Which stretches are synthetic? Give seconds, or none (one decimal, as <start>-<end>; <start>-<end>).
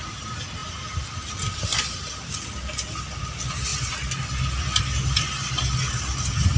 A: none